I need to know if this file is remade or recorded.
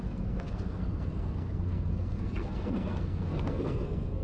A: remade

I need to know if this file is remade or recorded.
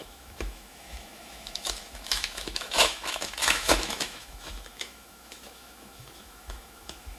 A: remade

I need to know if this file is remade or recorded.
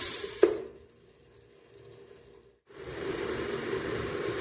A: recorded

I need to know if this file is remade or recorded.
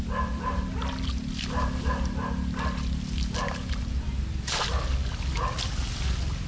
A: recorded